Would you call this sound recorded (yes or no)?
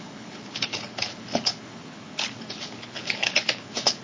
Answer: no